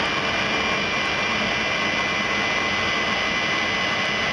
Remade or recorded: recorded